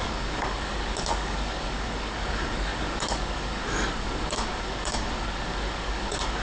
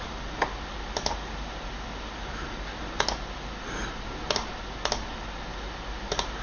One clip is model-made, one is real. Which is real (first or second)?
second